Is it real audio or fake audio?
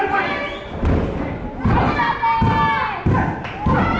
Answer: real